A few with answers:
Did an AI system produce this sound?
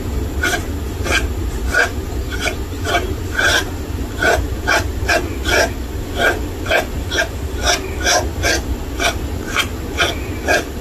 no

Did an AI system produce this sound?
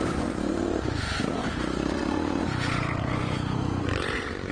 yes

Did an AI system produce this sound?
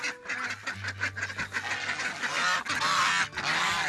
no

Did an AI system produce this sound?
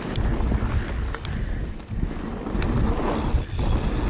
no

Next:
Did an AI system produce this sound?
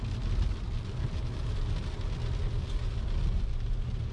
no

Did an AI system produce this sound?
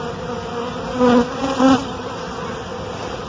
no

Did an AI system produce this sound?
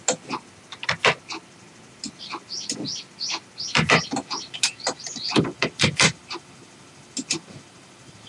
no